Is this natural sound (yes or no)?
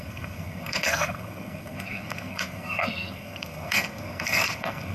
no